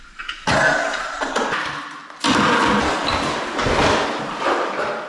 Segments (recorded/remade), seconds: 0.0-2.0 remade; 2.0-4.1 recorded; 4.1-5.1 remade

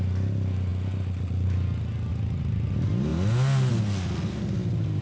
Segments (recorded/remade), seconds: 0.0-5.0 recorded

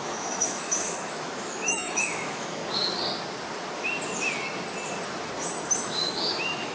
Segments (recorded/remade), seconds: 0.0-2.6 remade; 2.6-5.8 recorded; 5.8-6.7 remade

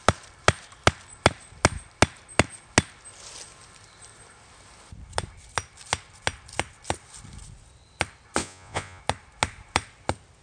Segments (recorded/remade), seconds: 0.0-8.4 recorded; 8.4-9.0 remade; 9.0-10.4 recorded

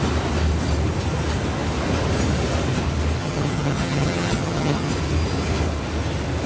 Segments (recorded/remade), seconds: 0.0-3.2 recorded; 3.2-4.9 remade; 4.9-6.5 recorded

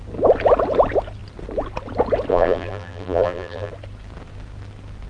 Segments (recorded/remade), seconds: 0.0-2.3 recorded; 2.3-3.7 remade; 3.7-5.1 recorded